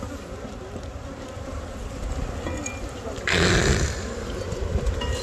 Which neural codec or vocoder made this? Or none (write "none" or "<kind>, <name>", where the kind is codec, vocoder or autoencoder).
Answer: none